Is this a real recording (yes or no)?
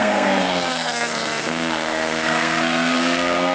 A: no